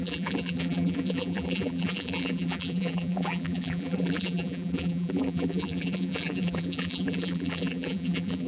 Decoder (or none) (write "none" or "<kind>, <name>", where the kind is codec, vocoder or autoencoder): vocoder, BigVGAN v2